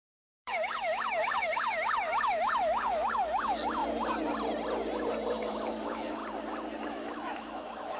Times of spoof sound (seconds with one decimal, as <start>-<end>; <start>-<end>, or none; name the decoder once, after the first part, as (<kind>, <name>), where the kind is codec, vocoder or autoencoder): 0.0-3.8 (autoencoder, DAC-VAE); 5.5-6.2; 6.9-8.0

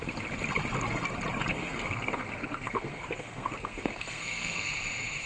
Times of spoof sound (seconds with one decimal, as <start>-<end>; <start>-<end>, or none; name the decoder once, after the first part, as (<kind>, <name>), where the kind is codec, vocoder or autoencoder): 1.5-4.7 (codec, SNAC)

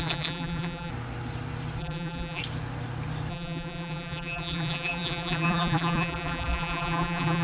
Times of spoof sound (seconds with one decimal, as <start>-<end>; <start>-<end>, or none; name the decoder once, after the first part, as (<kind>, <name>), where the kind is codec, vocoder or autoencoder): 0.0-0.9 (vocoder, BigVGAN v2); 1.8-2.4; 3.3-7.4

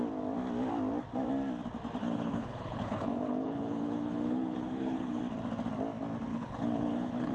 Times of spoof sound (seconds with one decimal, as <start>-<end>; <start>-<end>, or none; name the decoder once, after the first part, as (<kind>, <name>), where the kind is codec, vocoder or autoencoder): 2.0-5.2 (codec, HILCodec); 6.3-7.3